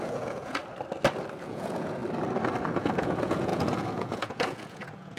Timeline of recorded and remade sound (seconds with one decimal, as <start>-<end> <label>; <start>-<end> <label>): 0.0-0.6 remade; 0.6-1.4 recorded; 1.4-2.0 remade; 2.0-2.7 recorded; 2.7-5.2 remade